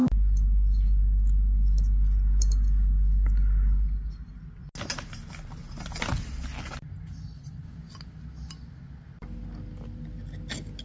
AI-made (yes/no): no